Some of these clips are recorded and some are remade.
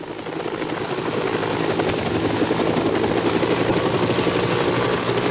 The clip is recorded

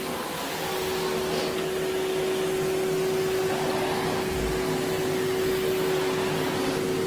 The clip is recorded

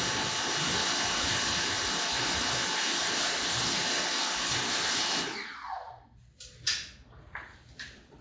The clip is recorded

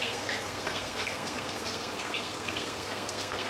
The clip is remade